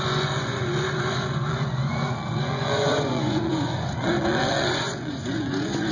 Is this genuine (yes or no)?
no